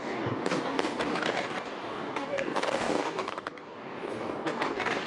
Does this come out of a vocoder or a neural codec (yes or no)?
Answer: yes